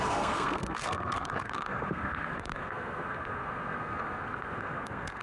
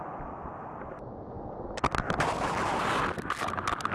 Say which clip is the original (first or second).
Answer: second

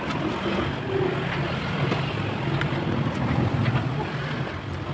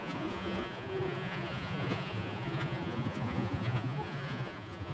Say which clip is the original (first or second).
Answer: first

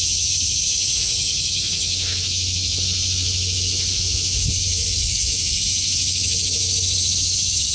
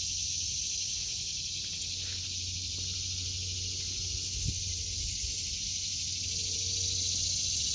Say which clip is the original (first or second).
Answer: second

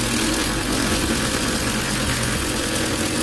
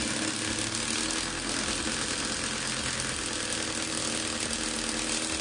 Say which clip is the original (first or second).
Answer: second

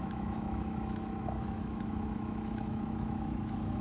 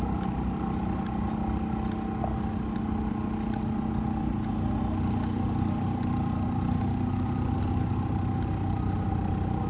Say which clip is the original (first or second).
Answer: second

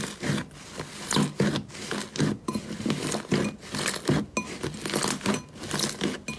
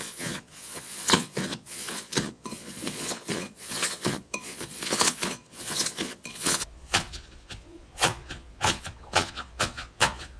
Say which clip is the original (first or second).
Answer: first